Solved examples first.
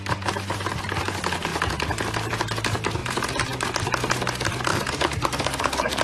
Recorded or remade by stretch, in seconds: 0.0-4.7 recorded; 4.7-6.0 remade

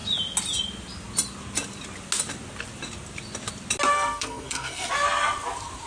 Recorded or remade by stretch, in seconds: 0.0-3.9 recorded; 3.9-4.9 remade; 4.9-5.9 recorded

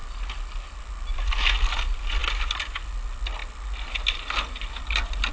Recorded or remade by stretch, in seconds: 0.0-5.3 recorded

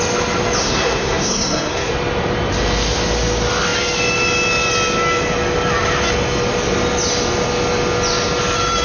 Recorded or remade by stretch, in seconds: 0.0-0.6 recorded; 0.6-1.9 remade; 1.9-8.8 recorded